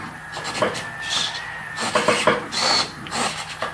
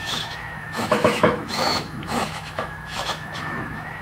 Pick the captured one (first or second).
first